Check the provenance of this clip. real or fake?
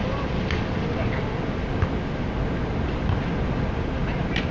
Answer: real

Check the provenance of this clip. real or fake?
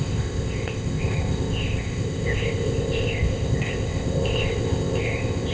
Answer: fake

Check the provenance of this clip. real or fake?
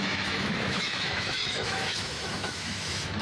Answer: fake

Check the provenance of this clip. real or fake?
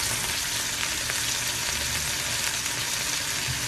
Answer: real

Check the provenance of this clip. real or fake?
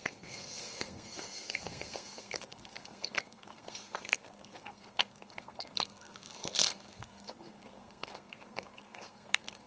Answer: fake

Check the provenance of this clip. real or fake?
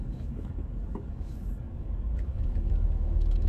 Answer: fake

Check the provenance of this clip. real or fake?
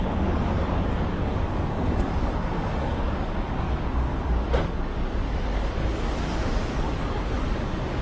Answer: fake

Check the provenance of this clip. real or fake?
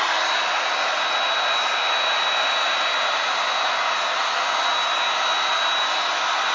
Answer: real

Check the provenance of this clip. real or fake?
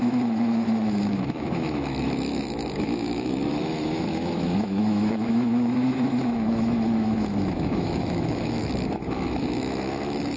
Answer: fake